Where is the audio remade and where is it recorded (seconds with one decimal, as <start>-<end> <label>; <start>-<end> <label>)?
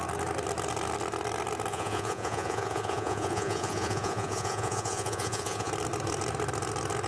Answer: 0.0-1.7 recorded; 1.7-5.7 remade; 5.7-7.1 recorded